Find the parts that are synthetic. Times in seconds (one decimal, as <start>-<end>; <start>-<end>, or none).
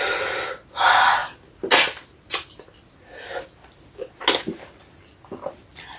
none